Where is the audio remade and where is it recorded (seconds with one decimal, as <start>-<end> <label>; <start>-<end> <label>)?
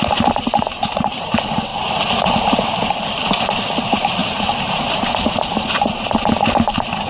0.0-7.1 recorded